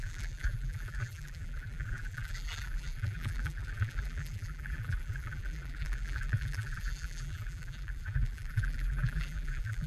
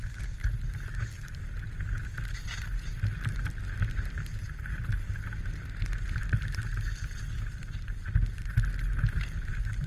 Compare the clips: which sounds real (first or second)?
second